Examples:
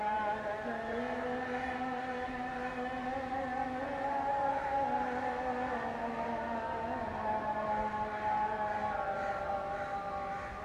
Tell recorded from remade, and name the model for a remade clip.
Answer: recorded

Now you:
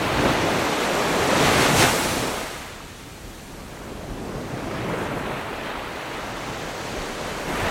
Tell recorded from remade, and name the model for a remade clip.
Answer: recorded